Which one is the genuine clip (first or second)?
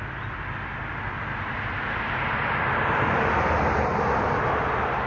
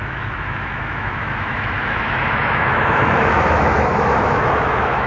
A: first